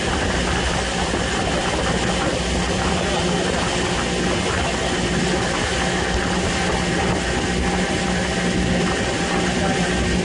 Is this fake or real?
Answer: real